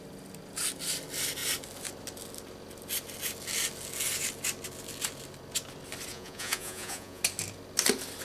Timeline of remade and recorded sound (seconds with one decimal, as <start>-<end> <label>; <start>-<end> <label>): 0.0-6.1 recorded; 6.1-7.2 remade; 7.2-8.2 recorded